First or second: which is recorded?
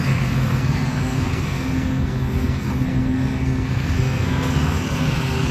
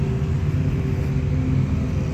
second